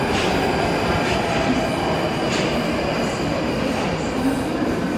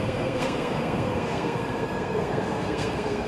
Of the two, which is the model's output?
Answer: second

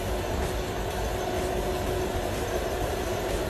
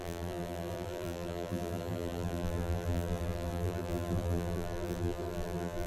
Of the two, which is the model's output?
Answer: second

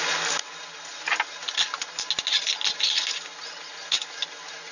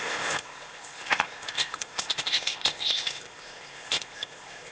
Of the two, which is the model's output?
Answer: second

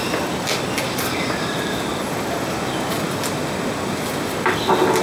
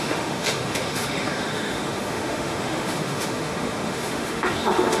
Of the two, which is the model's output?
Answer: second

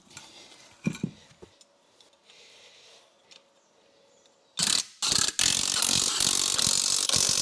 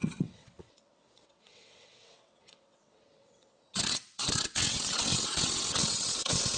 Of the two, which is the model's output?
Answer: second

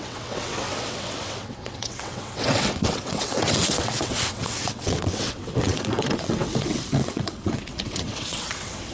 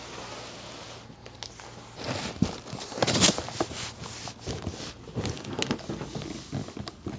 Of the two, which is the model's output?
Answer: first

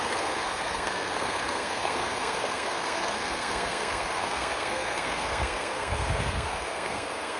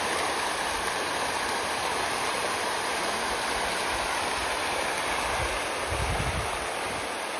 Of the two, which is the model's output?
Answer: first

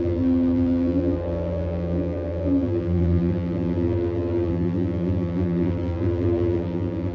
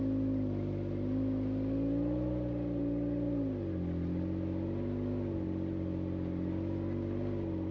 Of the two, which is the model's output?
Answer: first